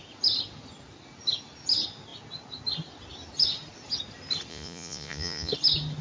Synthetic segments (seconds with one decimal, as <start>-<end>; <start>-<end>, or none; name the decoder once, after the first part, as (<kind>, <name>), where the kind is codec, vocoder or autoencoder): 4.5-5.5 (vocoder, Vocos)